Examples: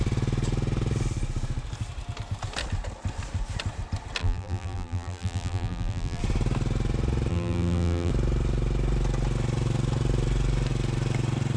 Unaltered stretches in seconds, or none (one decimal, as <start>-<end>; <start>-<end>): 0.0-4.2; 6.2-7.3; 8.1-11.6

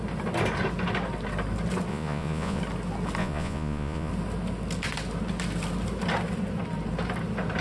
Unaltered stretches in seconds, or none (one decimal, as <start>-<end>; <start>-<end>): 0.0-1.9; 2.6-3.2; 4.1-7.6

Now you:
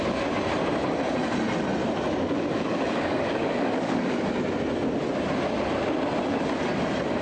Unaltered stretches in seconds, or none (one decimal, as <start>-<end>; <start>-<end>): 0.0-2.5; 4.3-7.2

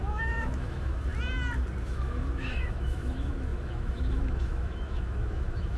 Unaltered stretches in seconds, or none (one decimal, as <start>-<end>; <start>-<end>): 1.1-1.8